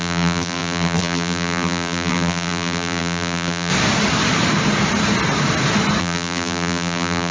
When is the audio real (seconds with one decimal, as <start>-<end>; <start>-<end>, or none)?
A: 3.7-6.0